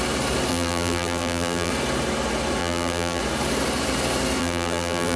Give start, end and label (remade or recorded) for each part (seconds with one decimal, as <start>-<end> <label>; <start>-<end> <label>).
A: 0.0-0.5 recorded; 0.5-1.7 remade; 1.7-2.6 recorded; 2.6-3.2 remade; 3.2-4.4 recorded; 4.4-5.2 remade